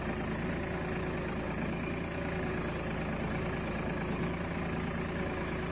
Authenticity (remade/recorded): recorded